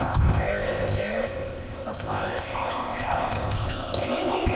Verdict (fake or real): fake